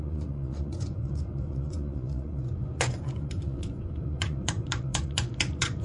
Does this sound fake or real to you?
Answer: fake